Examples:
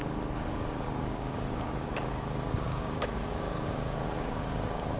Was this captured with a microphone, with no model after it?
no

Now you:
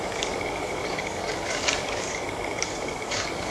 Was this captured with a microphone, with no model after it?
no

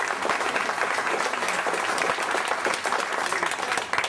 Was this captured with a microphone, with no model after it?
yes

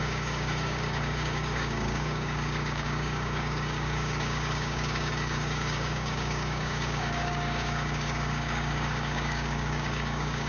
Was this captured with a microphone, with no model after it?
no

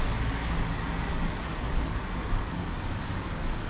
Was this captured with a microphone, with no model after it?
no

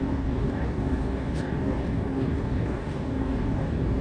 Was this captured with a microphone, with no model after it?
no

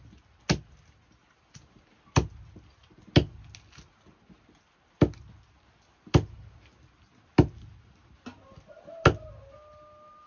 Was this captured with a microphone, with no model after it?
yes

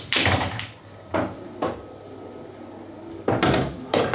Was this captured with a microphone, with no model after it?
yes